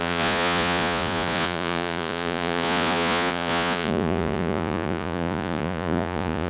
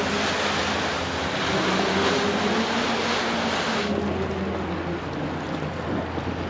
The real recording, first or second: second